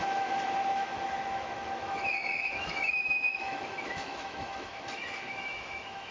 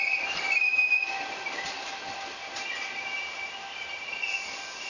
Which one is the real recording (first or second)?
second